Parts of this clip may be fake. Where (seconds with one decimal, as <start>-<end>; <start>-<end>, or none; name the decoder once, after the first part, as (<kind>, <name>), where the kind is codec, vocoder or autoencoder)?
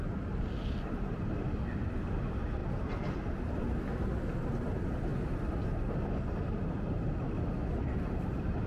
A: none